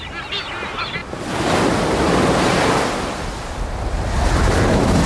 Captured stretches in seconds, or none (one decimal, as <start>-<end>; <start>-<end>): 0.0-5.1